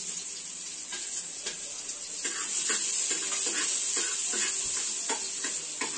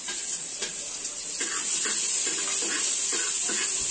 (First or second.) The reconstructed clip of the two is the second